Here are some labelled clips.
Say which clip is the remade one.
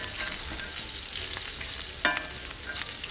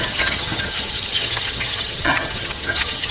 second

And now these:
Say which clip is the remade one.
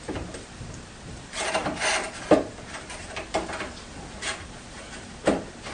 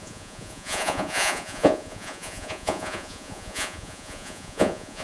second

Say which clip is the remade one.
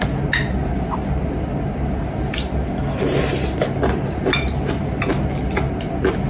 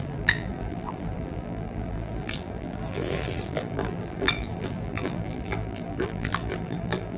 second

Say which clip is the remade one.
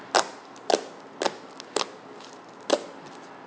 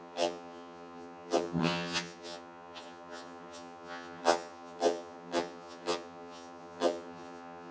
second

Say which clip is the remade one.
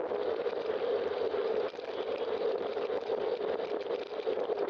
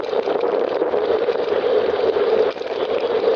second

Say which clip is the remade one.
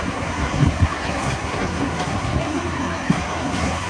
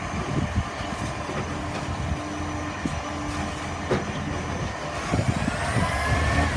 first